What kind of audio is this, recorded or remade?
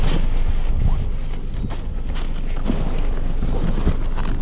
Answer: recorded